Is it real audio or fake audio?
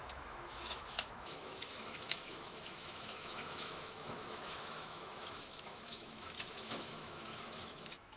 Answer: fake